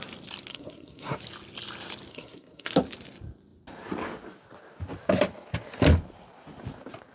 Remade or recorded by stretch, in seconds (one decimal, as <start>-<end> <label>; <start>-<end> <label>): 0.0-0.5 recorded; 0.5-1.2 remade; 1.2-2.1 recorded; 2.1-2.7 remade; 2.7-7.1 recorded